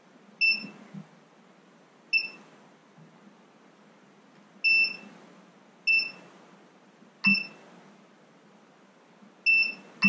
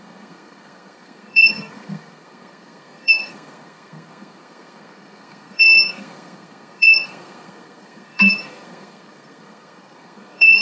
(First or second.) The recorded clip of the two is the first